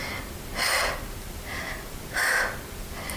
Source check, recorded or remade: recorded